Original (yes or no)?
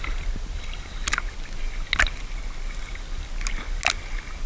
yes